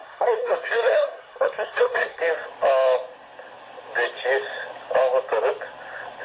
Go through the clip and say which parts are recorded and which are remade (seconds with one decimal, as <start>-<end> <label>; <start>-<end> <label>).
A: 0.0-2.2 remade; 2.2-6.2 recorded